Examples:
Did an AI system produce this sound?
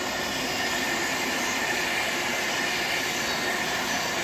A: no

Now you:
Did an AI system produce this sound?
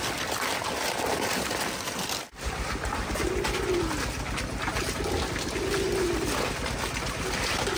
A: no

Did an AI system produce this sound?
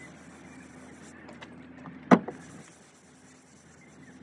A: no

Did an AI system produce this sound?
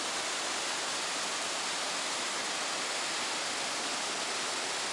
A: no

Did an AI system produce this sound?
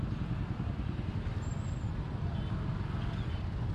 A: no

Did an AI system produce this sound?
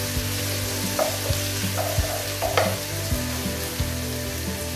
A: no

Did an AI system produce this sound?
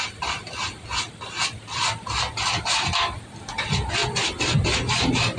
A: no